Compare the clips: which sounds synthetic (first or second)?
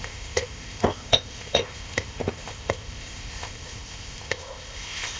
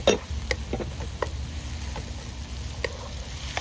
first